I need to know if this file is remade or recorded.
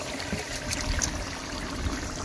remade